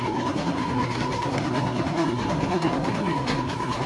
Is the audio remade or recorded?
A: remade